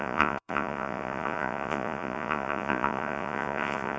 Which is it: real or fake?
fake